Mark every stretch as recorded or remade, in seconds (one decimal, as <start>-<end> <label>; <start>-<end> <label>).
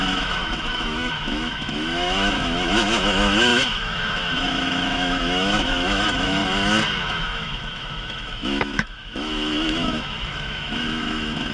0.0-6.4 remade; 6.4-7.0 recorded; 7.0-11.5 remade